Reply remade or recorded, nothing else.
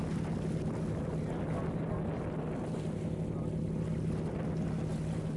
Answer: recorded